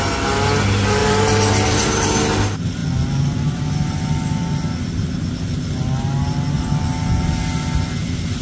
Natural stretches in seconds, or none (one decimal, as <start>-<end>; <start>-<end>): 0.0-1.0; 2.1-8.4

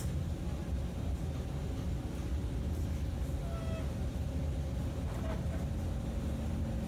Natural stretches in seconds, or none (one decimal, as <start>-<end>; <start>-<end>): 0.0-6.9

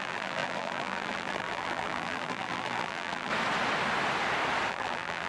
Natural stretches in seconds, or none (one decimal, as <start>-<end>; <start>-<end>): 3.3-4.7

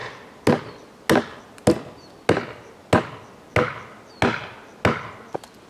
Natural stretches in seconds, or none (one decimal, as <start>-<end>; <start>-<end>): 0.0-5.7